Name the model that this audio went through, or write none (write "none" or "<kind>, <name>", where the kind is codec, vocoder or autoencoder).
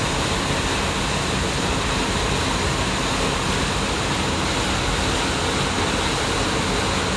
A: none